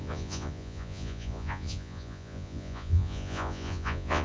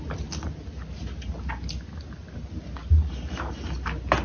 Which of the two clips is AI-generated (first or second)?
first